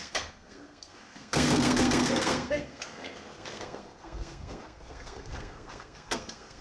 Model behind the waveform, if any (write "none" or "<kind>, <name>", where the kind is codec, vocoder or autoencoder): codec, SNAC